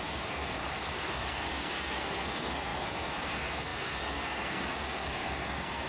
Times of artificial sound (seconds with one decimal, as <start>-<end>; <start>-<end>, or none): 0.0-0.6; 1.1-5.9